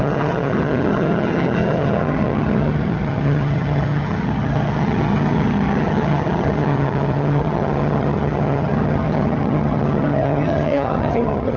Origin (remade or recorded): remade